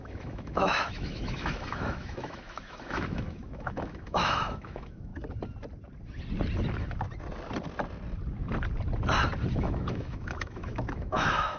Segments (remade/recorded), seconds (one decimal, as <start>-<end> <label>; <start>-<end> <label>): 0.0-5.1 remade; 5.1-9.5 recorded; 9.5-11.6 remade